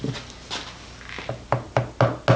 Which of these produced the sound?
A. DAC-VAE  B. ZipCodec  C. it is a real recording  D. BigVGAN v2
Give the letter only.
C